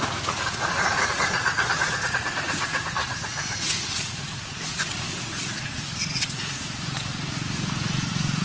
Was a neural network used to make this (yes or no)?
yes